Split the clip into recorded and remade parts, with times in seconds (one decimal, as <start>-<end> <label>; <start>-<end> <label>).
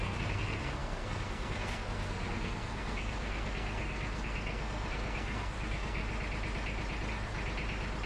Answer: 0.0-6.0 remade; 6.0-8.1 recorded